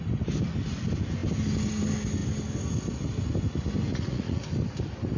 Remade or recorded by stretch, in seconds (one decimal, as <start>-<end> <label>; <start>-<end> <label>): 0.0-3.9 recorded; 3.9-4.4 remade; 4.4-5.2 recorded